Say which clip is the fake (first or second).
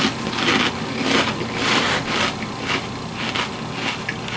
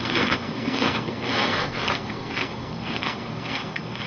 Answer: second